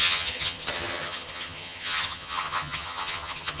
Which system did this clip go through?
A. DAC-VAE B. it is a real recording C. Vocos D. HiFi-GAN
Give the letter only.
D